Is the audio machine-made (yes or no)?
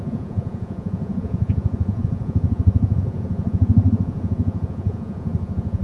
yes